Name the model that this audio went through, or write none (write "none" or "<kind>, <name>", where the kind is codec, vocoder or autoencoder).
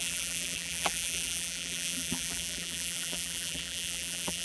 vocoder, BigVGAN v2